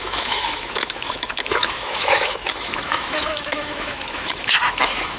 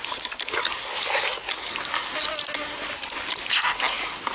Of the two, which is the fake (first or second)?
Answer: first